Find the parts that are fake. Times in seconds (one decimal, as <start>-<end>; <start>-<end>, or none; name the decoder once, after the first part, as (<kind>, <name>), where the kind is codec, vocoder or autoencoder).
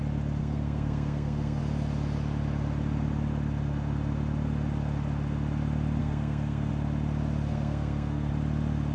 0.4-1.6 (codec, SNAC); 6.0-6.7; 7.5-8.3